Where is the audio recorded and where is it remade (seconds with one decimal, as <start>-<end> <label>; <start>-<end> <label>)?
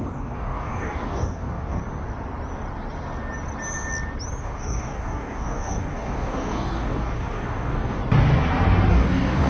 0.0-1.8 remade; 1.8-4.4 recorded; 4.4-8.0 remade; 8.0-8.9 recorded; 8.9-9.5 remade